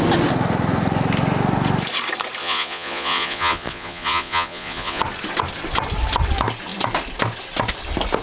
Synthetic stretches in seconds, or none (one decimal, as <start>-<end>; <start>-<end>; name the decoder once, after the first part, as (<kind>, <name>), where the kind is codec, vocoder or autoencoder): 2.4-5.0 (vocoder, Vocos)